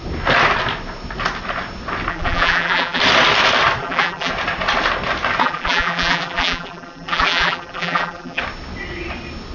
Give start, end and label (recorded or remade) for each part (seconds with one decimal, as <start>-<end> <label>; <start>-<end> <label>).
0.0-2.1 recorded; 2.1-3.0 remade; 3.0-3.8 recorded; 3.8-4.3 remade; 4.3-5.4 recorded; 5.4-8.4 remade; 8.4-9.5 recorded